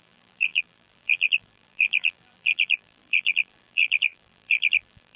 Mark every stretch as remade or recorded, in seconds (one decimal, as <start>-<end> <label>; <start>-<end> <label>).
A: 0.0-5.2 remade